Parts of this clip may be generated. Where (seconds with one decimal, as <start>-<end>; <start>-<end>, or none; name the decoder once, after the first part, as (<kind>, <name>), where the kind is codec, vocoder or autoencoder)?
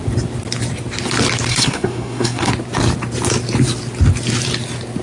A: 1.5-2.5 (codec, SNAC)